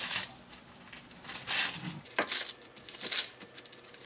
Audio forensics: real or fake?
real